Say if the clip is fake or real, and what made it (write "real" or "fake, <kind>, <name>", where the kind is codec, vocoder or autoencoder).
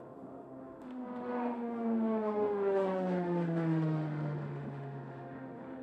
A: fake, autoencoder, DAC-VAE